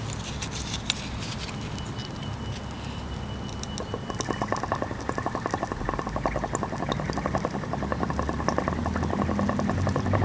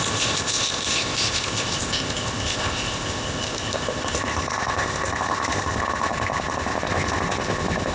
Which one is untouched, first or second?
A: first